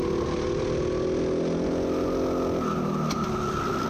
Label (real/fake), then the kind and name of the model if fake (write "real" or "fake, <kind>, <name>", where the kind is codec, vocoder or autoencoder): real